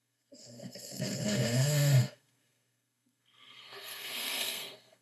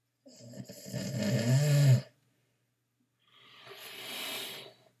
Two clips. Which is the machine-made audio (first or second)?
first